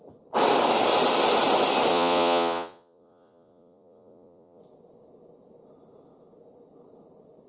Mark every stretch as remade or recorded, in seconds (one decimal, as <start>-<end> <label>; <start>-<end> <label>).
0.0-1.9 recorded; 1.9-4.6 remade; 4.6-7.5 recorded

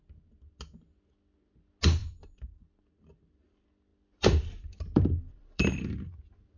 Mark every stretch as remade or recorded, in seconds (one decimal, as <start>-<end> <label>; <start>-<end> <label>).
0.0-2.0 recorded; 2.0-3.0 remade; 3.0-3.9 recorded; 3.9-5.9 remade; 5.9-6.6 recorded

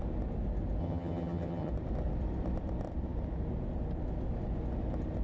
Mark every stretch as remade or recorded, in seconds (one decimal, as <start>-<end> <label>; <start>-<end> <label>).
0.0-0.8 recorded; 0.8-1.7 remade; 1.7-5.2 recorded

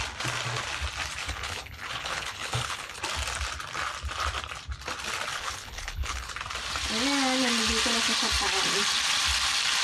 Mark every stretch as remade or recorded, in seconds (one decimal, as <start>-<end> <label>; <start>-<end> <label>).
0.0-1.2 recorded; 1.2-3.0 remade; 3.0-5.3 recorded; 5.3-6.3 remade; 6.3-9.8 recorded

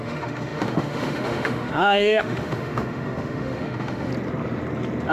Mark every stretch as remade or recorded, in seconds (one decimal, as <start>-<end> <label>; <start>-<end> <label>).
0.0-4.1 remade; 4.1-5.1 recorded

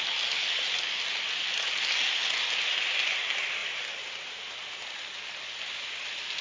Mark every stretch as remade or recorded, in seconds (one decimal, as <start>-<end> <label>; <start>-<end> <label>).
0.0-3.6 recorded; 3.6-4.3 remade; 4.3-6.4 recorded

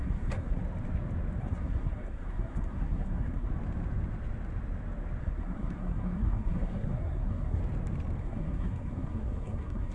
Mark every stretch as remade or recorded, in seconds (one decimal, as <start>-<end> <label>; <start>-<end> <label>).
0.0-0.6 remade; 0.6-1.4 recorded; 1.4-3.5 remade; 3.5-5.2 recorded; 5.2-7.6 remade; 7.6-8.2 recorded; 8.2-9.9 remade